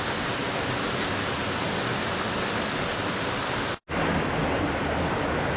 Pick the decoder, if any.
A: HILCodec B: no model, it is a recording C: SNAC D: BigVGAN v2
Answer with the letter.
B